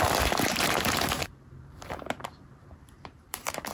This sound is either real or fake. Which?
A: fake